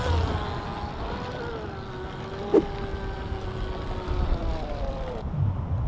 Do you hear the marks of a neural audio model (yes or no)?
no